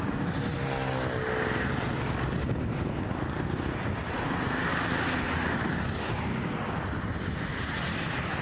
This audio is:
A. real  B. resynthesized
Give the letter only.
A